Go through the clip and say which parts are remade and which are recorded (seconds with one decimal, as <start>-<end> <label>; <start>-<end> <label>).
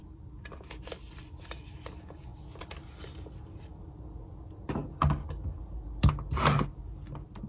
0.0-7.5 recorded